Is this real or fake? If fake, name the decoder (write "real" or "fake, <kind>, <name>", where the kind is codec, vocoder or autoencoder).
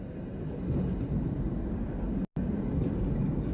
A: real